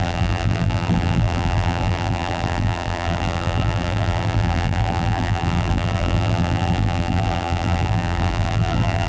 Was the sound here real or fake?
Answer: fake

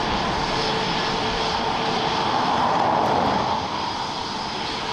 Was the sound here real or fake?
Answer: fake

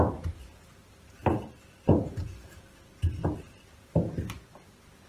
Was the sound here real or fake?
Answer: real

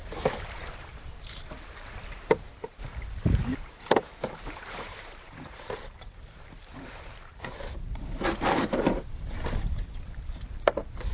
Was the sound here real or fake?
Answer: fake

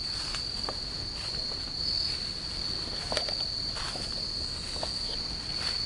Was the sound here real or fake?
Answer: real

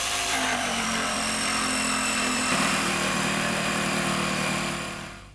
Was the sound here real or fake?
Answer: fake